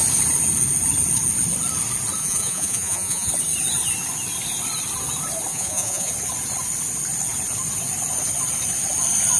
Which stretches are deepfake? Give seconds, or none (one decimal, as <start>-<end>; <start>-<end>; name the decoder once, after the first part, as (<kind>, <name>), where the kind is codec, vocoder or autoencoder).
2.2-3.3 (vocoder, Vocos); 5.5-6.1